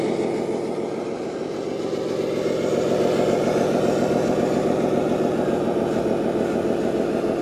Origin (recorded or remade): recorded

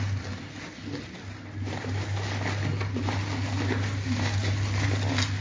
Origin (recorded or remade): recorded